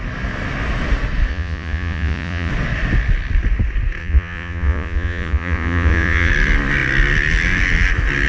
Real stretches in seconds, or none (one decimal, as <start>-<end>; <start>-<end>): 0.0-1.3; 2.5-4.0; 6.3-8.3